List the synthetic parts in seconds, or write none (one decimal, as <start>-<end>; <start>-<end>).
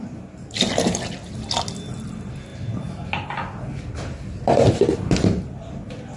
none